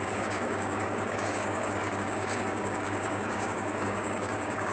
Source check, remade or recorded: remade